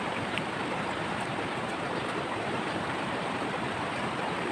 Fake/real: fake